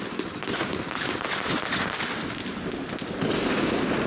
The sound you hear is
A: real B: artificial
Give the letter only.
A